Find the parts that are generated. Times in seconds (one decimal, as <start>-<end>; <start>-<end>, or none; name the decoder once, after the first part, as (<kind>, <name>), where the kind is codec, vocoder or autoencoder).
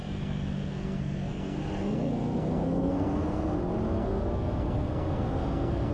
0.0-3.5 (codec, SNAC); 3.9-5.9